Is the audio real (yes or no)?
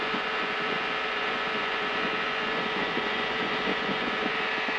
no